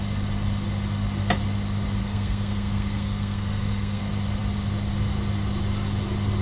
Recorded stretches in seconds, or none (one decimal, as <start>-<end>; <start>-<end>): 0.0-2.0; 4.0-6.4